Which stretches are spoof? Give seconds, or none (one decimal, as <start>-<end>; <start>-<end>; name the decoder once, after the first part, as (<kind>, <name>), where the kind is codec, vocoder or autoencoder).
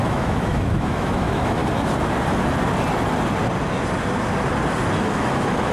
0.0-1.6 (autoencoder, DAC-VAE); 5.0-5.7